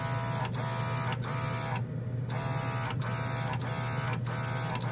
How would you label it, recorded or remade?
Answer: recorded